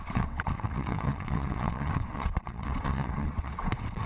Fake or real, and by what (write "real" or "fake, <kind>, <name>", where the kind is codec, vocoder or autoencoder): fake, vocoder, WaveNeXt